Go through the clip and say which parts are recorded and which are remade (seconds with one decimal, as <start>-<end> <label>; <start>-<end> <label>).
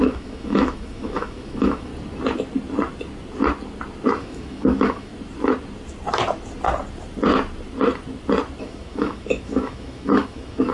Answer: 0.0-1.9 remade; 1.9-4.2 recorded; 4.2-5.1 remade; 5.1-8.6 recorded; 8.6-10.7 remade